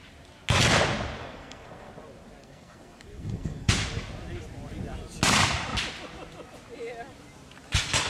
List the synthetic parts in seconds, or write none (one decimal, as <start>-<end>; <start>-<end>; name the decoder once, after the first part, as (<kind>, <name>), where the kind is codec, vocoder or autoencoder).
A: 1.2-1.9 (codec, SNAC); 2.4-3.7